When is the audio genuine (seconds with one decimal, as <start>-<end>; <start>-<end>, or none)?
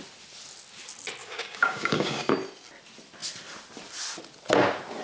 0.0-1.2; 2.3-5.0